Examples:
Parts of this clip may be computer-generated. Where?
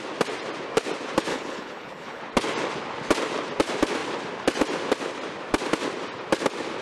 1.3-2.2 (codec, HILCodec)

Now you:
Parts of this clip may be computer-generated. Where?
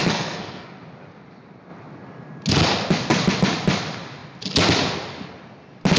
0.0-0.8 (codec, SNAC)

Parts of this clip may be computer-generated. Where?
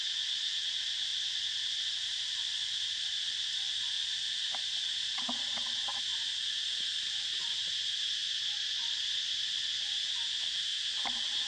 1.1-3.8 (vocoder, BigVGAN v2); 8.2-9.5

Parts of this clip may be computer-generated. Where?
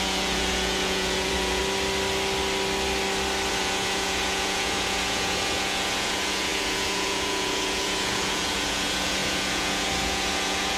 0.0-1.6 (vocoder, Vocos); 3.5-10.8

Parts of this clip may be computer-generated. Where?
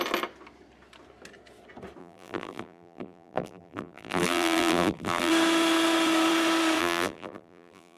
2.0-5.3 (vocoder, BigVGAN v2); 6.8-8.0